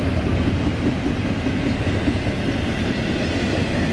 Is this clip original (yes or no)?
yes